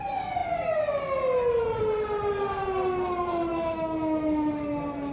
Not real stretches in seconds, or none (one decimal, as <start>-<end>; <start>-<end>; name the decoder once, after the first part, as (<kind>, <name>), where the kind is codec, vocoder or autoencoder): 3.5-4.5 (autoencoder, DAC-VAE)